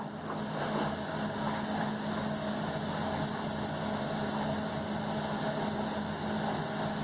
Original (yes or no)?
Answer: yes